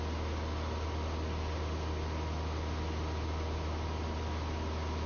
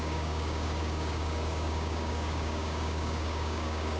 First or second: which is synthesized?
second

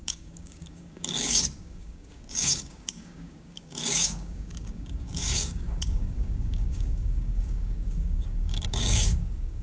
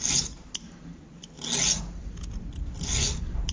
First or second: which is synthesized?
first